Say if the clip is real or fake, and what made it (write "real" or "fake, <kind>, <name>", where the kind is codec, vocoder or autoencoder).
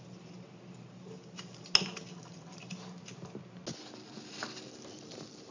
real